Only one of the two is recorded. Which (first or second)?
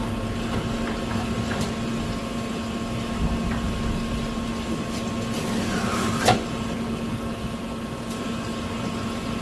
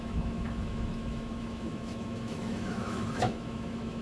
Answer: first